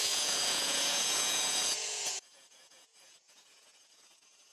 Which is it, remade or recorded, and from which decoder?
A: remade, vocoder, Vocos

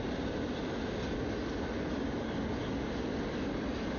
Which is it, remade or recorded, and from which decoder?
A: recorded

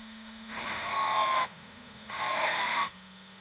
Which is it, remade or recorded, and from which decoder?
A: remade, autoencoder, DAC-VAE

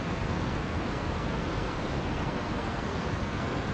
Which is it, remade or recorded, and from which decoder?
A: remade, codec, SNAC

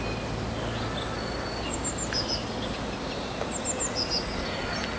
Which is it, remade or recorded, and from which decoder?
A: recorded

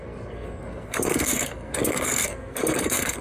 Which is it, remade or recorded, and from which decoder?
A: remade, codec, SNAC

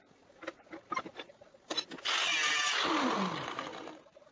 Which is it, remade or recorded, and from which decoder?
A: recorded